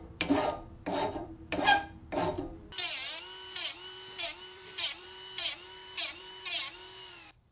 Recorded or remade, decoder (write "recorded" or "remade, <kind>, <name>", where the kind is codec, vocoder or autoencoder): remade, vocoder, BigVGAN v2